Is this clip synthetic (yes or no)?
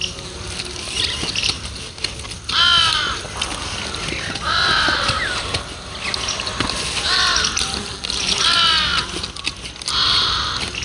no